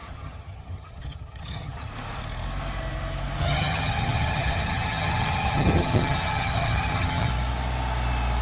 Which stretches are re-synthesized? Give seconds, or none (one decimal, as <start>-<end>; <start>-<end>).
0.0-1.9; 3.4-7.3